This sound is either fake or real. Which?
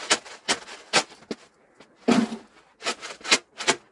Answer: real